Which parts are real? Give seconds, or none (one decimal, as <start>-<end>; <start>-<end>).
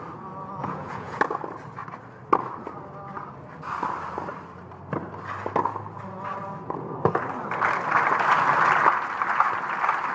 0.0-0.6; 1.2-10.1